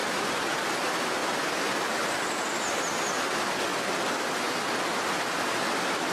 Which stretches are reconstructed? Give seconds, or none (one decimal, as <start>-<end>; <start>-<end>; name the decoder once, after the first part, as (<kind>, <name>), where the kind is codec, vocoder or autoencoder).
0.0-0.5 (vocoder, BigVGAN v2)